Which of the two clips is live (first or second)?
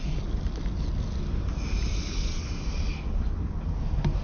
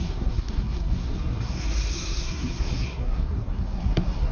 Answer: first